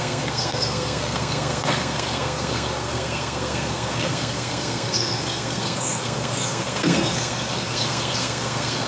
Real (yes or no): no